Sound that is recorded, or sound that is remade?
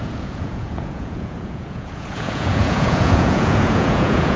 remade